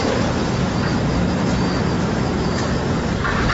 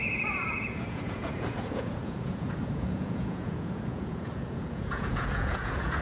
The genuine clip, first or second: first